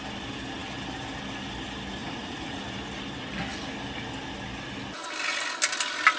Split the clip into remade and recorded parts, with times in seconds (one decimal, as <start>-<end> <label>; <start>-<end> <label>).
0.0-2.0 recorded; 2.0-2.6 remade; 2.6-6.2 recorded